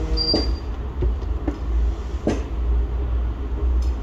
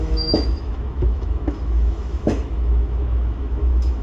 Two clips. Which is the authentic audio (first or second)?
first